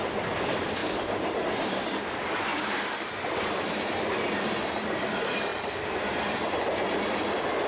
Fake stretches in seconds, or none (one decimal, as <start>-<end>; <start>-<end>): 0.8-1.4; 2.5-4.0; 5.5-6.5